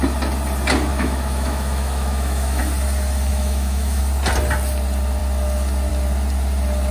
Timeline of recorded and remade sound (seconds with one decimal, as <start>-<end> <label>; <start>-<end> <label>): 0.0-0.9 recorded; 0.9-2.6 remade; 2.6-3.3 recorded; 3.3-4.0 remade; 4.0-6.9 recorded